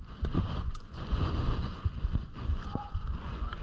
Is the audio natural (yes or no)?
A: no